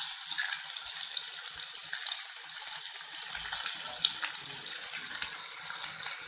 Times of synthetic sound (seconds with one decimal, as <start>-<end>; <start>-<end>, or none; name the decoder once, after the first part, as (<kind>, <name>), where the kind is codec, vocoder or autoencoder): none